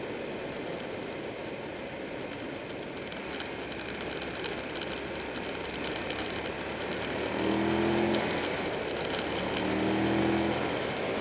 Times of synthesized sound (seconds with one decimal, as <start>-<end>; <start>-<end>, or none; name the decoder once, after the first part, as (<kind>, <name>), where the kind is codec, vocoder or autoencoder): 10.2-11.2 (autoencoder, DAC-VAE)